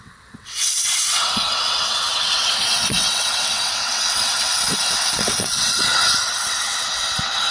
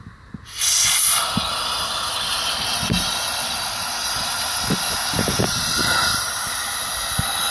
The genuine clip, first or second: second